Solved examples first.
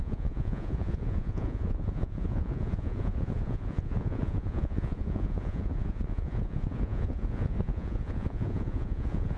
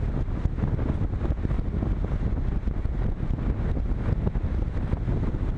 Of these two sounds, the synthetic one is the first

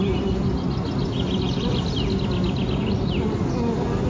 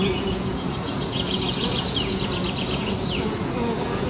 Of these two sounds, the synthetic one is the second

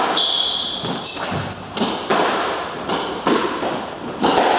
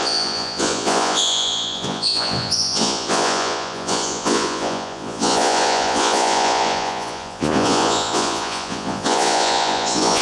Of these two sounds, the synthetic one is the second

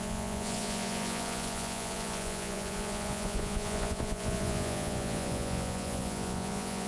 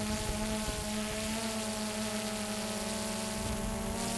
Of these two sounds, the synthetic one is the first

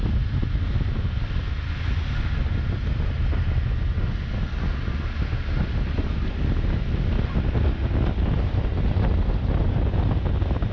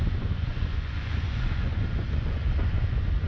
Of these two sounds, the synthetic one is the second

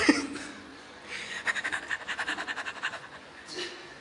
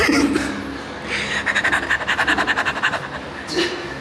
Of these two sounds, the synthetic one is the first